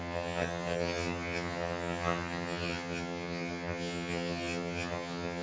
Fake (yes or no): yes